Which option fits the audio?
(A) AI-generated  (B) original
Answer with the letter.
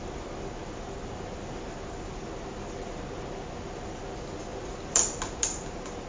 B